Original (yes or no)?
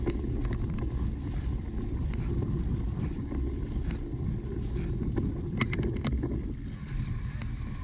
yes